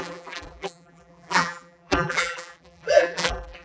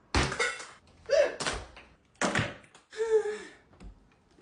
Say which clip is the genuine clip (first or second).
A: second